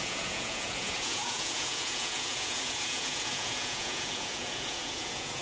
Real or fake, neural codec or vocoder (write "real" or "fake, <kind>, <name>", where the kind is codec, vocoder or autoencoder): fake, vocoder, Vocos